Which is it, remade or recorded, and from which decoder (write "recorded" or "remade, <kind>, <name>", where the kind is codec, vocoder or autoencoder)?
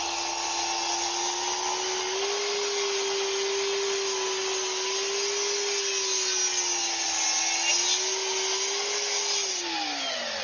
recorded